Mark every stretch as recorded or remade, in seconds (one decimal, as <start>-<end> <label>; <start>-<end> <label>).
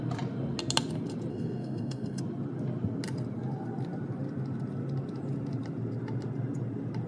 0.0-1.3 recorded; 1.3-2.2 remade; 2.2-7.1 recorded